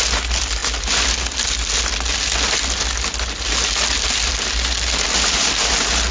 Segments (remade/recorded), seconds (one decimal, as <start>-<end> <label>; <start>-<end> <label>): 0.0-6.1 recorded